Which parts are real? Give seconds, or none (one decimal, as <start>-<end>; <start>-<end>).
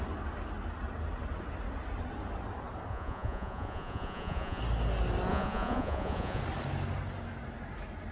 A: 0.0-2.9; 4.6-5.3; 6.4-8.1